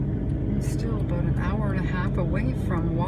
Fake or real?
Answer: real